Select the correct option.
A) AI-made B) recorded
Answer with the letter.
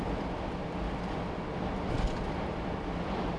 B